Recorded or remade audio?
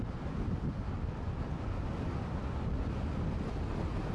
recorded